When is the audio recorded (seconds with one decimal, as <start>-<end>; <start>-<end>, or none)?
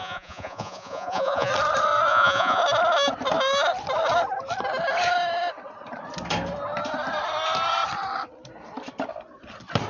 1.5-2.1; 2.6-9.9